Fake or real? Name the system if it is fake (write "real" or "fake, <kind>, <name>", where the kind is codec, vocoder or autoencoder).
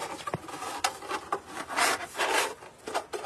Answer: real